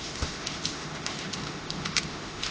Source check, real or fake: fake